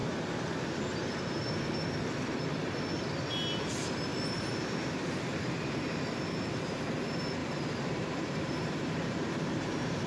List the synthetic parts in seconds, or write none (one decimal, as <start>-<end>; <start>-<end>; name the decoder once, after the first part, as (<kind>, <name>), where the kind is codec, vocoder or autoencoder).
0.0-1.9 (vocoder, BigVGAN v2); 4.1-6.1; 7.4-10.1